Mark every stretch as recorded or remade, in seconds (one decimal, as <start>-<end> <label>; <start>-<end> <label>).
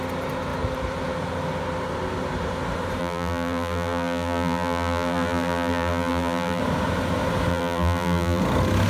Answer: 0.0-3.0 recorded; 3.0-6.6 remade; 6.6-7.5 recorded; 7.5-8.4 remade; 8.4-8.9 recorded